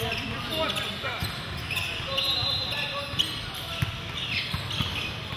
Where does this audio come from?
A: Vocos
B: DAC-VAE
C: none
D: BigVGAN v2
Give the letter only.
C